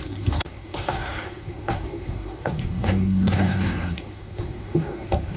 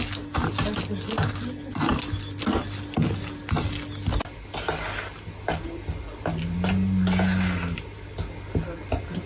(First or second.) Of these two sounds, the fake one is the first